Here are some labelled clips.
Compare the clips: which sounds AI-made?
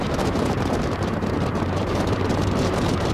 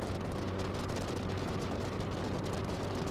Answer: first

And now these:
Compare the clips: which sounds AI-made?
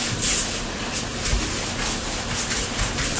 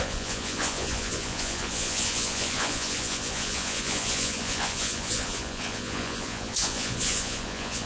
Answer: second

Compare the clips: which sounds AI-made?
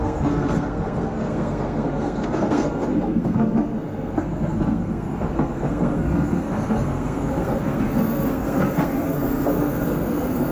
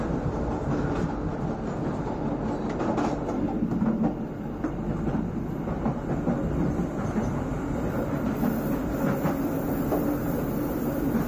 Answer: first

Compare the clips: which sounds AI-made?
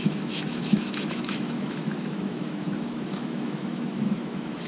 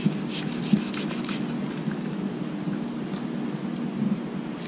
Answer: first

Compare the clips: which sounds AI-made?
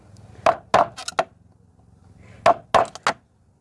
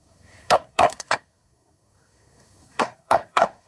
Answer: second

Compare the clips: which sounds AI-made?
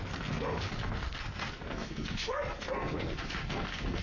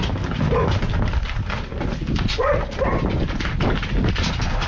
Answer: first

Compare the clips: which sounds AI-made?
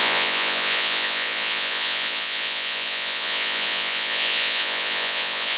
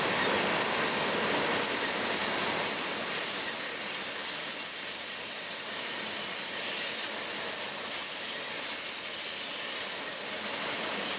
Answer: first